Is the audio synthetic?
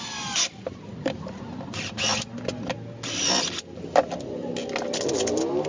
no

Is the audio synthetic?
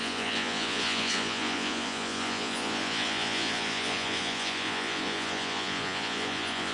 yes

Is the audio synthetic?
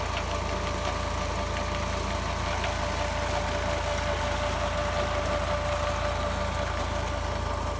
no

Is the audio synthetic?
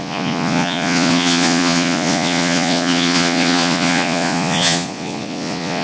yes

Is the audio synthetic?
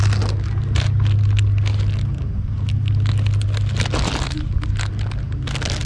no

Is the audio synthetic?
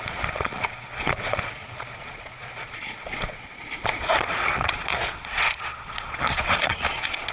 yes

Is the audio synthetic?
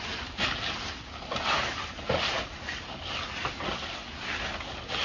no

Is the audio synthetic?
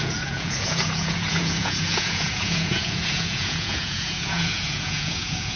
yes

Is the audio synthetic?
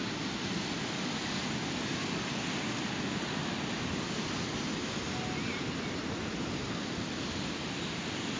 no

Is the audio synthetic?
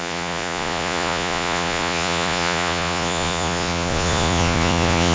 yes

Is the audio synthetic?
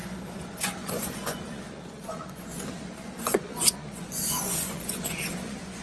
yes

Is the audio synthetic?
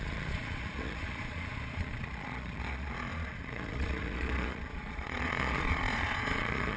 yes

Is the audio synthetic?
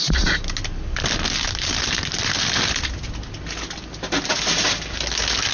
no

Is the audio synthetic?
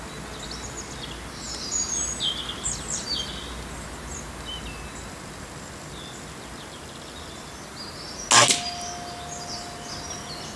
no